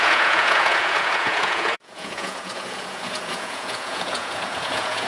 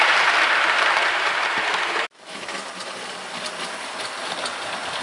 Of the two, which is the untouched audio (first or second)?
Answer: second